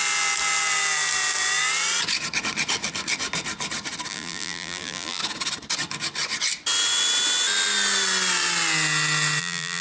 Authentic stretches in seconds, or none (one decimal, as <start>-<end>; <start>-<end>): 0.0-4.1; 5.2-9.4